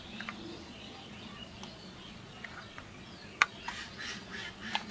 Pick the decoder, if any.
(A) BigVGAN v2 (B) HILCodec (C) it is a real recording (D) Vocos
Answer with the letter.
D